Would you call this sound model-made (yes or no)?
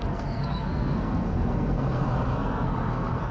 yes